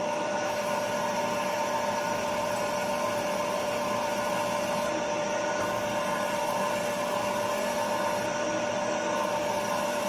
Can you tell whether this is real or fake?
real